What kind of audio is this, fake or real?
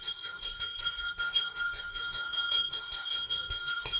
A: fake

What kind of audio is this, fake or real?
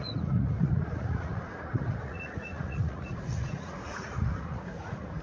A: fake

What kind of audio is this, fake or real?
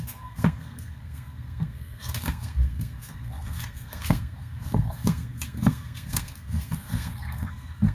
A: fake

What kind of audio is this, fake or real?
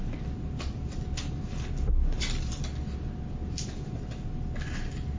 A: real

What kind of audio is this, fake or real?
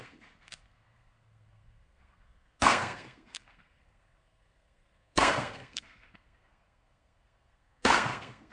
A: fake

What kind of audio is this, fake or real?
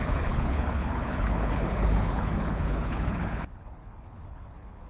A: fake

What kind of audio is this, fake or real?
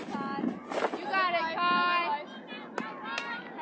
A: real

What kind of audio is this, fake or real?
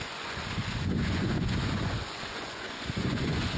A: fake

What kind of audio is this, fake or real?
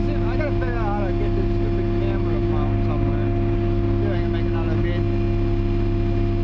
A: real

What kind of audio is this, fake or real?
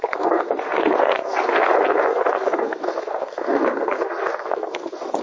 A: fake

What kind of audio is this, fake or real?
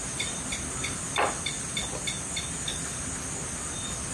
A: real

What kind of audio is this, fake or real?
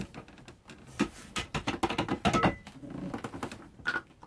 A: real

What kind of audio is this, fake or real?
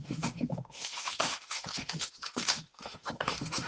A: fake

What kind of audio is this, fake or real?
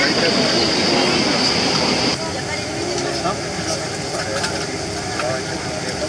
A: real